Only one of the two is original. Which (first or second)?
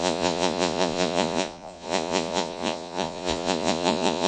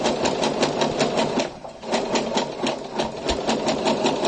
second